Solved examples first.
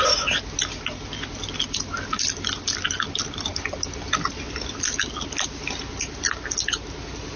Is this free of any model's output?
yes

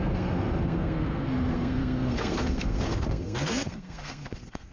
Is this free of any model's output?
no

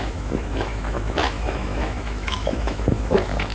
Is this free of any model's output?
no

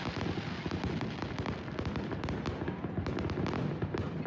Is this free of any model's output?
yes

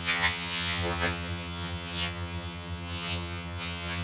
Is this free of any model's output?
no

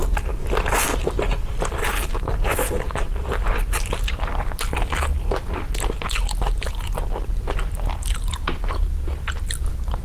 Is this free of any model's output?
yes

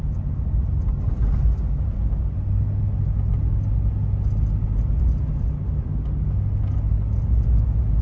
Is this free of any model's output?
yes